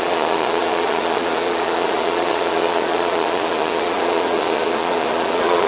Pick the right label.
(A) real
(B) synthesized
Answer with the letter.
B